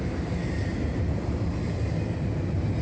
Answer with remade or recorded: recorded